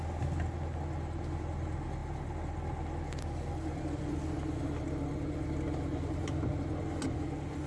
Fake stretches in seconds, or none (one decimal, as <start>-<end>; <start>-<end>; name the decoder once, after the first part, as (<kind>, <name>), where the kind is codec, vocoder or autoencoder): none